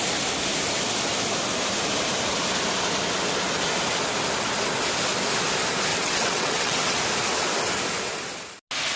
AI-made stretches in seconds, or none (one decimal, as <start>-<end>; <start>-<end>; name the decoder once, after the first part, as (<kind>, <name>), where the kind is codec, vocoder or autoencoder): 5.9-7.0 (vocoder, WaveNeXt)